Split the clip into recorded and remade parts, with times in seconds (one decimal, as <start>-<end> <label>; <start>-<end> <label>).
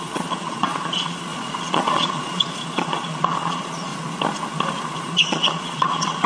0.0-3.9 remade; 3.9-5.0 recorded; 5.0-6.3 remade